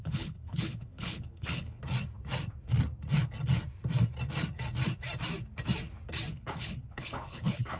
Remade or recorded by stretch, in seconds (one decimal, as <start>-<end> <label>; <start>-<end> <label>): 0.0-1.8 remade; 1.8-6.3 recorded; 6.3-7.8 remade